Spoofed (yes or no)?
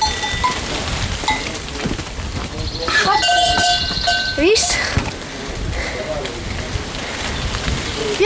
no